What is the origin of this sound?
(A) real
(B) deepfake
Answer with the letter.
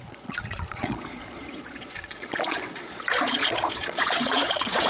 B